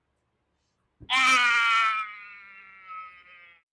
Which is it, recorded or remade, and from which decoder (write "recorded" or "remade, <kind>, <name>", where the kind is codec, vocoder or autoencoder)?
recorded